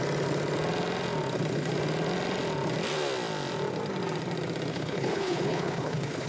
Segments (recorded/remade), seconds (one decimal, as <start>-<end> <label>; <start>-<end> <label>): 0.0-4.7 recorded; 4.7-6.3 remade

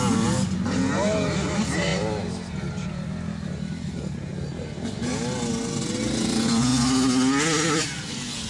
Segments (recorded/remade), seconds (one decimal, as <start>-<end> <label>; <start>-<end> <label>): 0.0-8.5 recorded

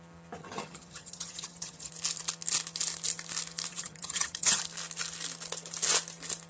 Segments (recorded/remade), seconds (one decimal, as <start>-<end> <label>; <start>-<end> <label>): 0.0-0.4 recorded; 0.4-1.9 remade; 1.9-3.7 recorded; 3.7-4.6 remade; 4.6-6.5 recorded